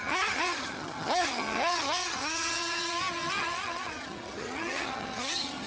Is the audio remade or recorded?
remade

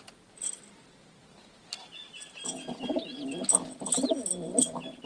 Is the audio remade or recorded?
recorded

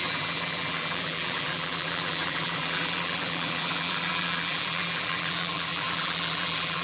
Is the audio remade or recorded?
remade